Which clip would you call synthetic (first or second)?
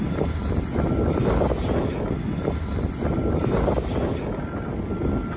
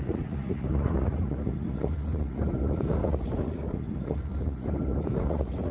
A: second